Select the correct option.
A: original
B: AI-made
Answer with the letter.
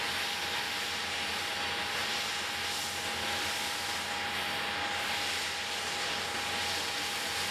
A